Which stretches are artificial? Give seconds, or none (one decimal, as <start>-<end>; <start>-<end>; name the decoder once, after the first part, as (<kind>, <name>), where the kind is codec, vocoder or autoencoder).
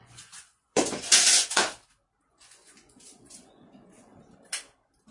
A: 0.0-1.6 (vocoder, Vocos); 2.3-4.1